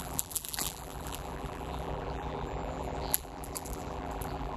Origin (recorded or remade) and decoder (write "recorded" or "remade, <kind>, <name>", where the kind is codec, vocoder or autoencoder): remade, vocoder, BigVGAN v2